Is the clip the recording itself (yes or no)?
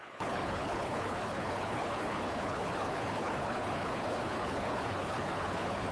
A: no